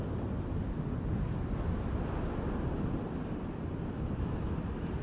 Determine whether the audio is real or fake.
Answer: real